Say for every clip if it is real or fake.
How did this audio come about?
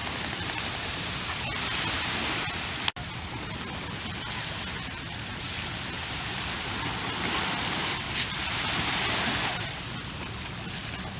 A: real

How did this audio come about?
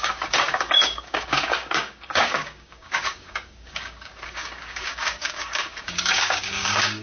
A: fake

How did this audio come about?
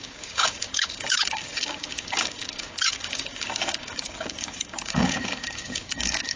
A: fake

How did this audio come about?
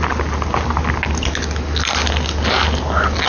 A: real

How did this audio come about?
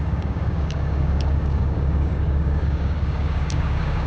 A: fake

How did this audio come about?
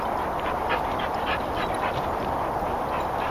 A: real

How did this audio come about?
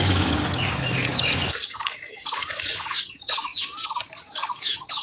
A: fake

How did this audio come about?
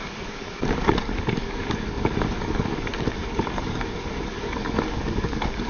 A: fake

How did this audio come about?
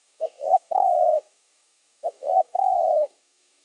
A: fake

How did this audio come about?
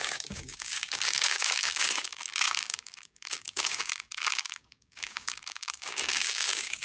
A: fake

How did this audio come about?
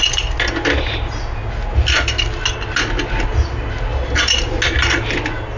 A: real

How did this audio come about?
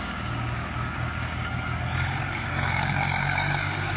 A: fake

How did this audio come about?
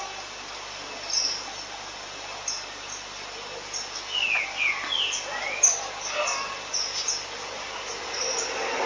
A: real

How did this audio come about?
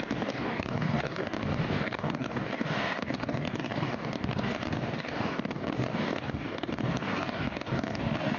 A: fake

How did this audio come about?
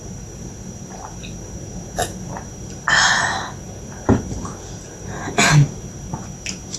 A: real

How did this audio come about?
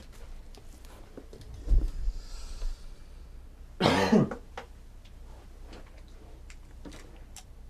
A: real